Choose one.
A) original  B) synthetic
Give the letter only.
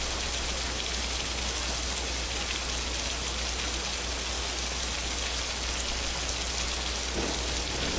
A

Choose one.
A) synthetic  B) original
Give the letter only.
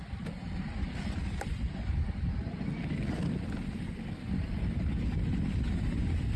B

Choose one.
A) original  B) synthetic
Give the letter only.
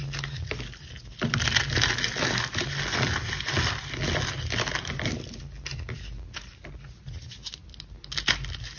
A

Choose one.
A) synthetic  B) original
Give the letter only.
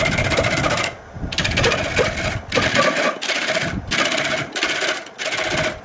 B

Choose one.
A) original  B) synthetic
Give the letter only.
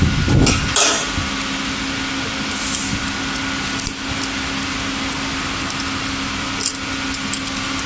A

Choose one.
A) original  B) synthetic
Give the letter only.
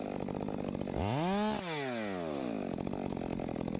A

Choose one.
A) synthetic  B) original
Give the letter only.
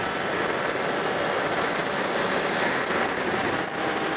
B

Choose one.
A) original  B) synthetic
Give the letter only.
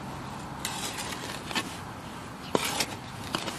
A